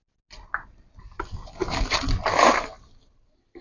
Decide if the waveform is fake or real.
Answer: real